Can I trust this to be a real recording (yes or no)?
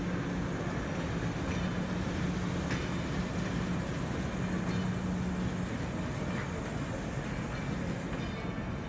yes